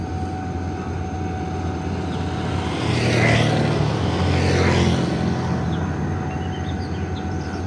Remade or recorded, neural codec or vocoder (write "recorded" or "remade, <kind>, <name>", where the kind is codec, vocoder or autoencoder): recorded